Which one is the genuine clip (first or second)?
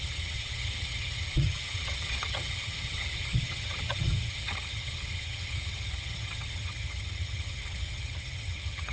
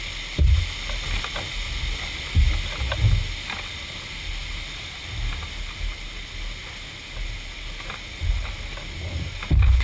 second